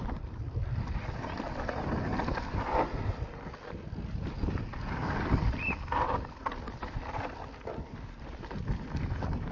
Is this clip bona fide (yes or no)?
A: yes